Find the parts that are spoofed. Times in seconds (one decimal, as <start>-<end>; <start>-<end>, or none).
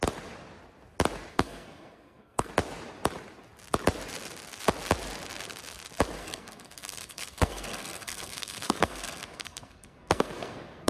1.3-2.5; 6.2-10.9